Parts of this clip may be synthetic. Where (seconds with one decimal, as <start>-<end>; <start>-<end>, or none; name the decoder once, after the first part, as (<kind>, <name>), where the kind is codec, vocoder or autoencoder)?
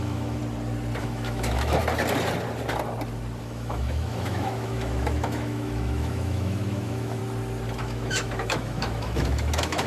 0.0-0.4 (autoencoder, DAC-VAE); 1.0-1.8; 3.4-7.2; 7.8-9.9